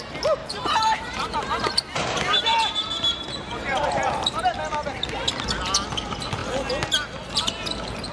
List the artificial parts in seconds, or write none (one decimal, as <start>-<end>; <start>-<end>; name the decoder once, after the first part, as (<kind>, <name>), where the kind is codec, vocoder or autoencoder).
0.4-4.4 (vocoder, BigVGAN v2)